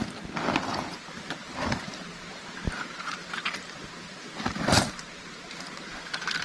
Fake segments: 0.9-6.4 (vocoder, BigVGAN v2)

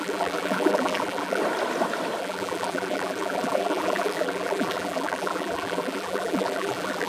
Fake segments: 0.0-1.4 (vocoder, BigVGAN v2); 2.2-7.1

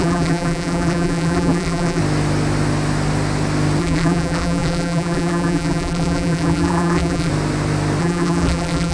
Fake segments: 0.0-2.0 (vocoder, BigVGAN v2); 3.8-7.3; 8.0-8.9

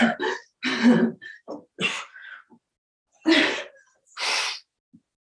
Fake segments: none

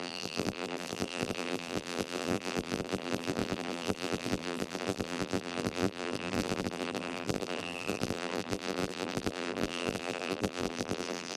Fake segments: 0.0-11.4 (vocoder, BigVGAN v2)